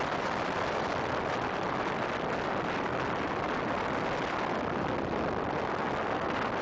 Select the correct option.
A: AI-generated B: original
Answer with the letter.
B